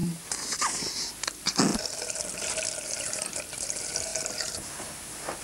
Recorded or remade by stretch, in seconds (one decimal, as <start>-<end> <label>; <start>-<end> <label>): 0.0-1.1 remade; 1.1-5.4 recorded